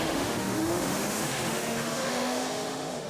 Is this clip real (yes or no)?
no